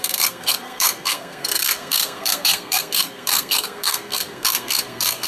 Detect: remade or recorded remade